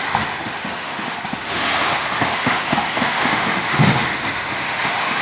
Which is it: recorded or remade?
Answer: remade